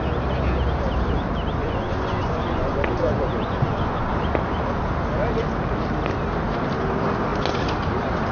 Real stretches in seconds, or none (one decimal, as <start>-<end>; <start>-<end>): 0.0-1.6; 4.1-8.3